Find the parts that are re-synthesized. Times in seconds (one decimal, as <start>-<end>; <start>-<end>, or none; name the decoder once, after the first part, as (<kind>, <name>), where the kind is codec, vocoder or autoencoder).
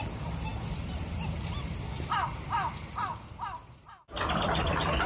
none